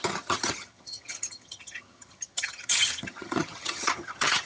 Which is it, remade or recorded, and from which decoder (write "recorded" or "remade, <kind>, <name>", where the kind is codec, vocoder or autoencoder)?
remade, vocoder, HiFi-GAN